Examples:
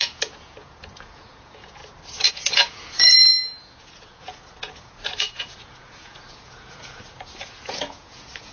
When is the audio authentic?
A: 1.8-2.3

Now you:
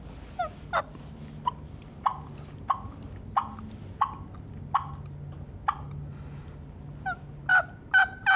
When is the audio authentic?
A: 0.0-8.4

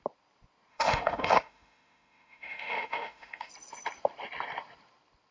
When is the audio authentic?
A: 0.0-0.7; 3.5-5.3

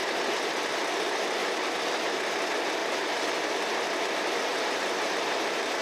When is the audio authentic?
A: 0.0-1.4; 2.2-2.8; 3.3-4.5; 5.1-5.8

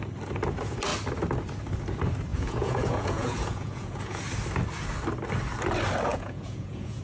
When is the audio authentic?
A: 0.0-2.3; 4.2-6.1